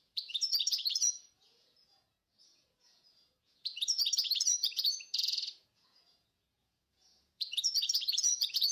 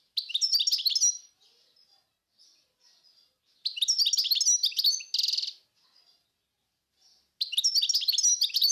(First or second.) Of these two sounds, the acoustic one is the second